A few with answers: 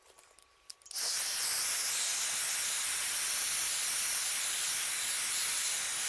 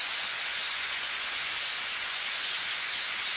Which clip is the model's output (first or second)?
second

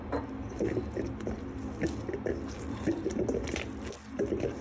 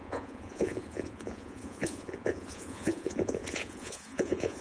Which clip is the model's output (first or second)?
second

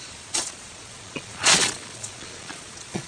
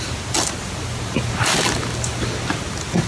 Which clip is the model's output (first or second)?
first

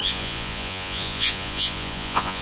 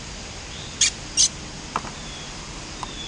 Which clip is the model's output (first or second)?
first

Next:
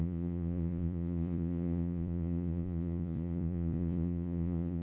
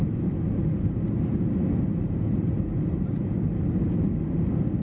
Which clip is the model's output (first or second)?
first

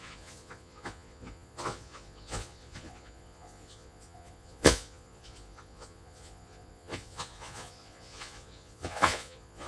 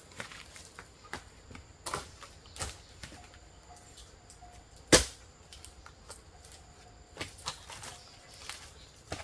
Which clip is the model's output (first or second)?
first